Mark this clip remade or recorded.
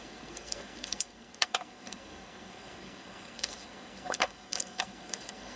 remade